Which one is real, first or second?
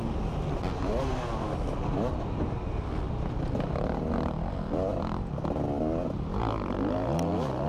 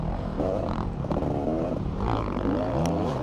first